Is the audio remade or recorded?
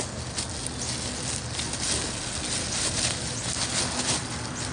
recorded